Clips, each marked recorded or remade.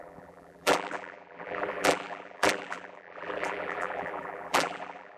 remade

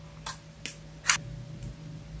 recorded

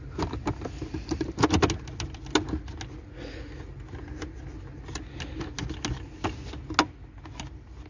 recorded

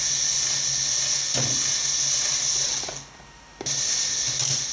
recorded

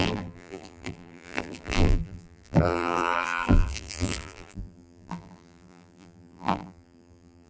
remade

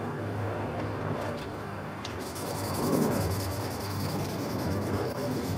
remade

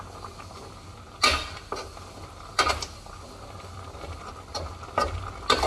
recorded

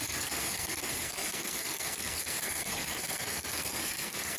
remade